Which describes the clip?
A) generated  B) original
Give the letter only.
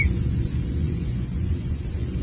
A